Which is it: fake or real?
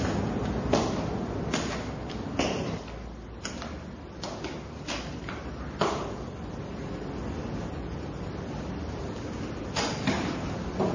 real